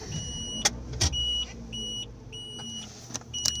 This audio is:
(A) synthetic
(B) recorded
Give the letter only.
B